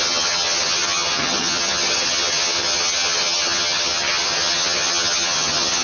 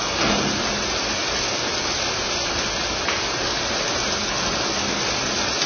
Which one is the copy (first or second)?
first